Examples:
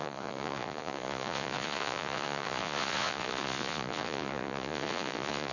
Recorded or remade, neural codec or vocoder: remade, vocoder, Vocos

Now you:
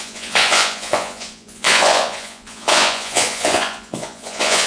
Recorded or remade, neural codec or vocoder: remade, vocoder, Vocos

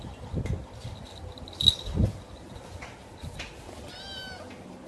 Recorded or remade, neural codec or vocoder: recorded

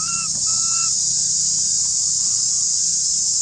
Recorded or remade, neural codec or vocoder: recorded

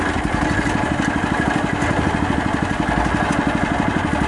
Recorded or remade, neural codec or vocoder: recorded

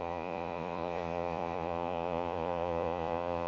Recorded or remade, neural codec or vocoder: remade, vocoder, Vocos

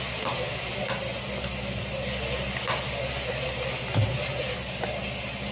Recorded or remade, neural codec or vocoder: recorded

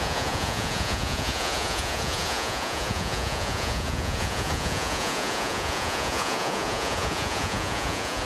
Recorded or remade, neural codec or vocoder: remade, vocoder, Vocos